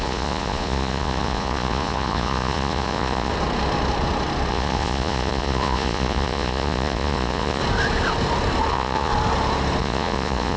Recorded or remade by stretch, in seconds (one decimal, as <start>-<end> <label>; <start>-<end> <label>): 0.0-3.3 remade; 3.3-4.5 recorded; 4.5-7.6 remade; 7.6-8.7 recorded; 8.7-9.1 remade; 9.1-9.8 recorded; 9.8-10.6 remade